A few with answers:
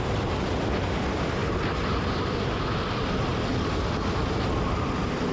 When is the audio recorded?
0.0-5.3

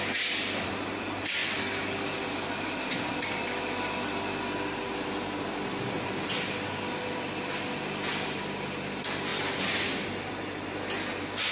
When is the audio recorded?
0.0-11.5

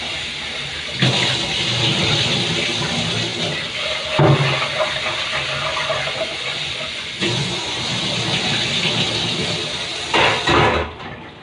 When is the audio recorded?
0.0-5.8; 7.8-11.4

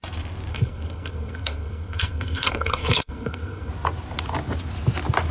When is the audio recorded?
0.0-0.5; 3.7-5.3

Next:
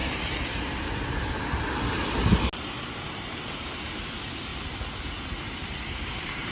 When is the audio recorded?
0.0-3.0; 4.5-5.8

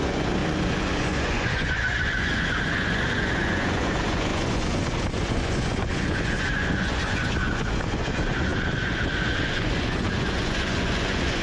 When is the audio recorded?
none

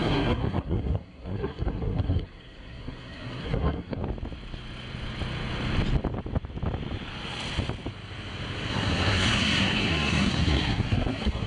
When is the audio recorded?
4.0-8.7

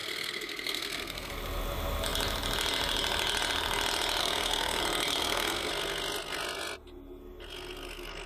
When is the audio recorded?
1.3-4.2; 4.8-5.2; 5.7-8.3